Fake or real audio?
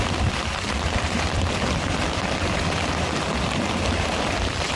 fake